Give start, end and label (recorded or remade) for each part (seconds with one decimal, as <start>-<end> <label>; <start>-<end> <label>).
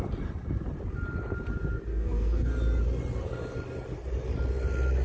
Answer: 0.0-1.9 recorded; 1.9-2.5 remade; 2.5-5.0 recorded